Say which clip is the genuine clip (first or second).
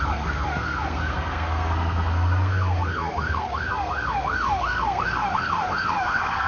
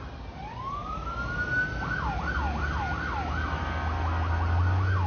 second